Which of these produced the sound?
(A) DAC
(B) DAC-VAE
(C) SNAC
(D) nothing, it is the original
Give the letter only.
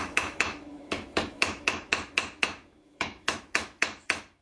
B